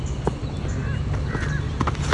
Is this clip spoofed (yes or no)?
no